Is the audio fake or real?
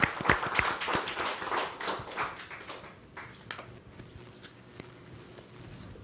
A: real